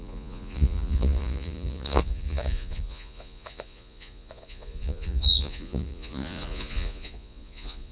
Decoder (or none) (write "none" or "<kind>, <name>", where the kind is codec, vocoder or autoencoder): vocoder, Vocos